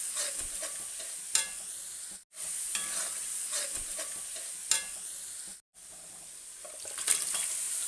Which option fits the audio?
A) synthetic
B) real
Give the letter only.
B